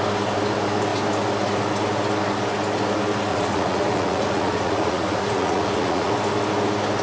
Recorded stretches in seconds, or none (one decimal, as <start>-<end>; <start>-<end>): 0.0-3.3; 6.1-7.0